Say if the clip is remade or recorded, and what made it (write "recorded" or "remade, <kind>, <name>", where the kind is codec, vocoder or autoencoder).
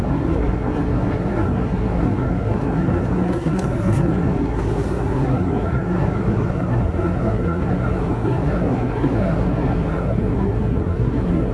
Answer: remade, codec, SNAC